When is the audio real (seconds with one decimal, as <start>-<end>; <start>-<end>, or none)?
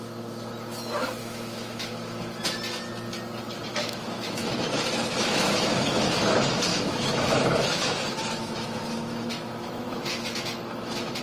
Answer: 0.0-1.2; 2.4-3.7; 6.0-6.7